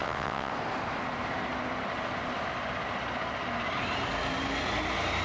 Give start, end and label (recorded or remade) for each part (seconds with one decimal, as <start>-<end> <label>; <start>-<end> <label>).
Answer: 0.0-0.5 remade; 0.5-5.2 recorded

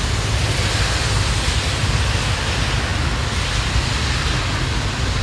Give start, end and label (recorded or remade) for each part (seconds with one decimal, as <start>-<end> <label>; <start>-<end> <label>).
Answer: 0.0-5.2 recorded